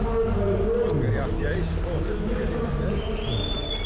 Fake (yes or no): no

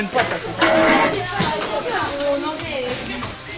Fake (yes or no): no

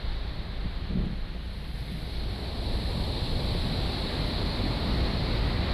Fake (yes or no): no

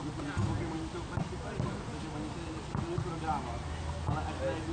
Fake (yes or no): no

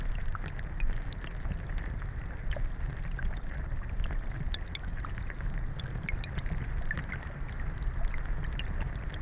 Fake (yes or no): no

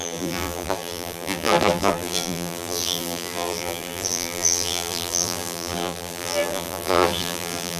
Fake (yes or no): yes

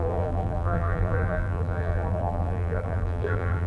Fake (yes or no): yes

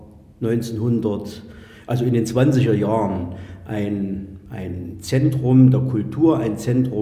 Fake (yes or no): no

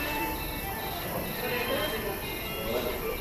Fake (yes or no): yes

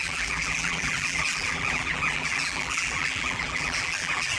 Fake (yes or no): yes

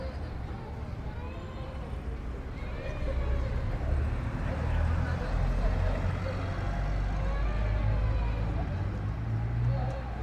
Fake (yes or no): no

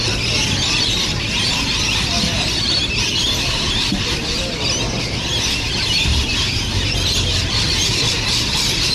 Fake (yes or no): yes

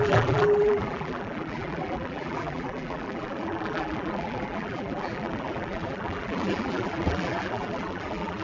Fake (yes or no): yes